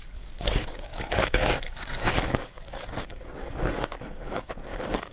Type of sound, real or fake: fake